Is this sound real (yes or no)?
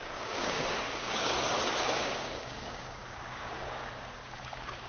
no